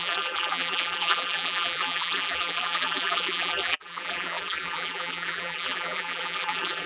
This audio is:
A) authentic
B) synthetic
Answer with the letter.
B